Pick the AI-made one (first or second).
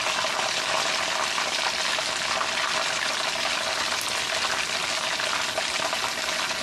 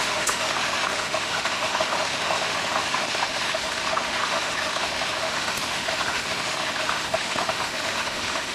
second